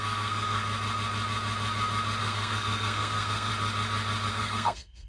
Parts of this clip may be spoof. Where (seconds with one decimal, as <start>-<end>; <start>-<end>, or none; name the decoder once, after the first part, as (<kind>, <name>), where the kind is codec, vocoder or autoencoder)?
0.0-0.6 (codec, SNAC); 2.2-3.5; 4.3-5.1